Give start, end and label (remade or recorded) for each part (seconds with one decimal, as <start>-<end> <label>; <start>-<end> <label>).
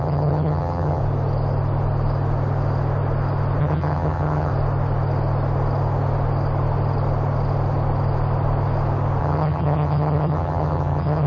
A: 0.0-1.0 remade; 1.0-3.6 recorded; 3.6-4.5 remade; 4.5-9.2 recorded; 9.2-11.3 remade